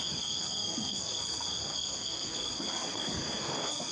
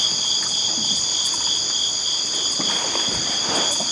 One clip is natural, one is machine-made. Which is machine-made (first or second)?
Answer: first